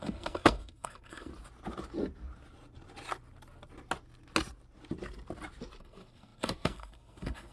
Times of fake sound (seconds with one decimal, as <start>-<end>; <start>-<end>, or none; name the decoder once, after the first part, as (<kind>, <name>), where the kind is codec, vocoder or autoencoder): 0.0-1.3 (codec, SNAC); 5.8-7.5